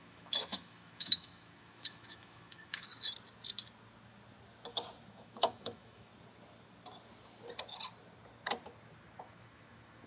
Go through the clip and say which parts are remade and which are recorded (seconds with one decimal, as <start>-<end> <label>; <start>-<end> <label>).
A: 0.0-2.9 remade; 2.9-5.1 recorded; 5.1-6.1 remade; 6.1-9.2 recorded; 9.2-10.1 remade